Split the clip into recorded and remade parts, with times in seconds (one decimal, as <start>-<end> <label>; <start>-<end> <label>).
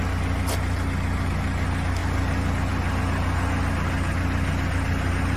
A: 0.0-5.4 recorded